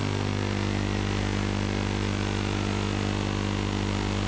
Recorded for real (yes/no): yes